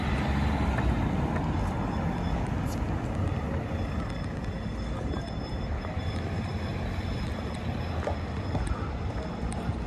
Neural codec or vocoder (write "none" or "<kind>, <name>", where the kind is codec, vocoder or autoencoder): none